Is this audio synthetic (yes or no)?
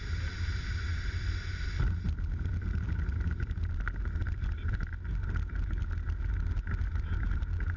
no